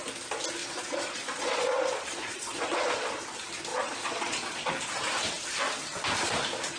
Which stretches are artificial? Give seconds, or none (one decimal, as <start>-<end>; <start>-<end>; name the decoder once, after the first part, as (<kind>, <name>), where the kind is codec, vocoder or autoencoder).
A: 0.6-3.1 (vocoder, Vocos); 3.7-4.7